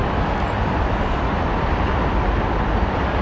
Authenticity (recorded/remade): recorded